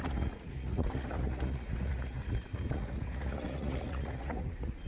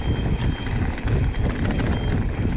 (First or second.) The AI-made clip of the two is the first